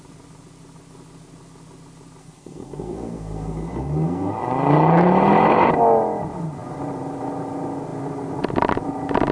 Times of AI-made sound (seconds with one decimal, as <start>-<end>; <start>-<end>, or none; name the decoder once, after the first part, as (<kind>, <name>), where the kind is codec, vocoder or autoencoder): 2.2-4.3 (codec, SNAC)